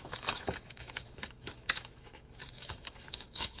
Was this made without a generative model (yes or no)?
no